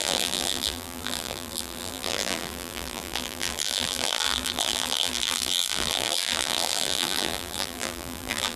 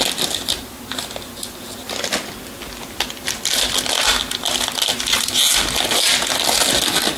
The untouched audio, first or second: second